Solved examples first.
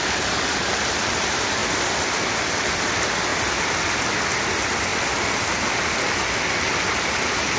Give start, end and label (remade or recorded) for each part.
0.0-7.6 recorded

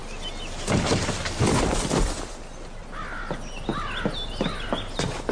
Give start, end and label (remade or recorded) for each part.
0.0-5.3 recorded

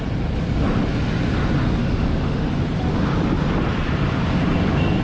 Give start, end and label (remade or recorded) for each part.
0.0-1.8 recorded; 1.8-2.5 remade; 2.5-5.0 recorded

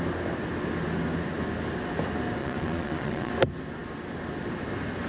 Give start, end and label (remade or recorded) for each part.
0.0-2.4 recorded; 2.4-3.3 remade; 3.3-5.1 recorded

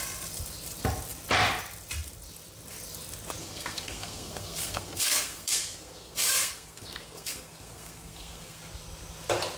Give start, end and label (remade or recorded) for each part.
0.0-3.4 recorded; 3.4-8.6 remade; 8.6-9.6 recorded

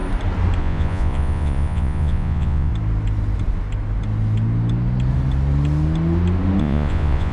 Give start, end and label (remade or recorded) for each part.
0.0-0.6 recorded; 0.6-2.7 remade; 2.7-6.6 recorded; 6.6-7.3 remade

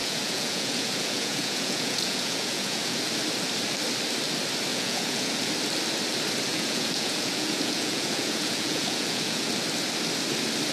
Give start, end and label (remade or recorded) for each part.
0.0-3.0 remade; 3.0-4.7 recorded; 4.7-5.5 remade; 5.5-6.5 recorded; 6.5-9.5 remade; 9.5-10.7 recorded

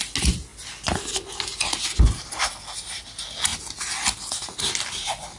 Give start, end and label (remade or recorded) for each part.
0.0-5.4 recorded